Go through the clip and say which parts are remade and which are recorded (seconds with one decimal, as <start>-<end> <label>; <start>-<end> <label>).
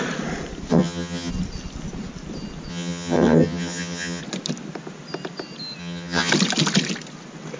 0.0-0.7 recorded; 0.7-1.3 remade; 1.3-2.7 recorded; 2.7-4.2 remade; 4.2-5.8 recorded; 5.8-6.3 remade; 6.3-7.6 recorded